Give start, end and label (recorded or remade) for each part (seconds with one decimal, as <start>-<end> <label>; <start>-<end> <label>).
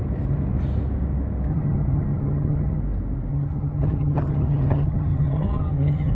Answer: 0.0-1.5 recorded; 1.5-2.8 remade; 2.8-3.3 recorded; 3.3-6.1 remade